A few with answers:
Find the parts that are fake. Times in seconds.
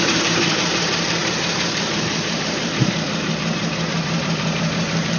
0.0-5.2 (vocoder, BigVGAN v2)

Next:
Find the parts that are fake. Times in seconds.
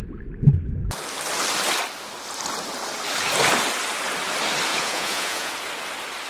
4.7-5.5 (vocoder, Vocos)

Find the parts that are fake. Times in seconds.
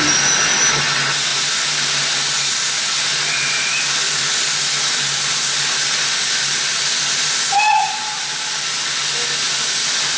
none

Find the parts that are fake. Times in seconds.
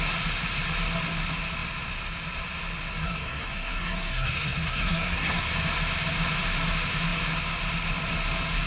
3.0-5.4 (codec, SNAC)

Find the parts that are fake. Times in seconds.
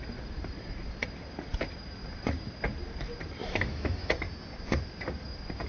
3.4-4.1 (autoencoder, DAC-VAE)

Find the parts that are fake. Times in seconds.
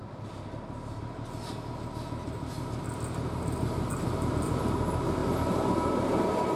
none